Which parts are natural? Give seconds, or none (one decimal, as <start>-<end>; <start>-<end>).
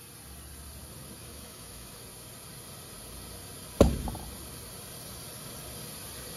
0.0-1.2; 2.0-6.4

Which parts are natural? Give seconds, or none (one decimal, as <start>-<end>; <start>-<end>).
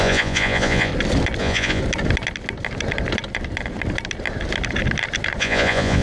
0.9-1.4; 1.8-5.4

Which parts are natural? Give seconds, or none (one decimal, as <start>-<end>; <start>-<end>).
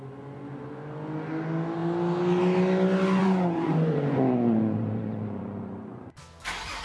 0.0-3.2; 6.2-6.8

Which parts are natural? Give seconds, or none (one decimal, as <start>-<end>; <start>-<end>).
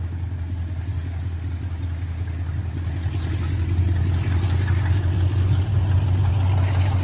0.0-7.0